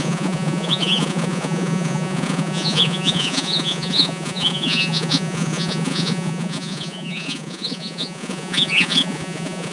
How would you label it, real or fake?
fake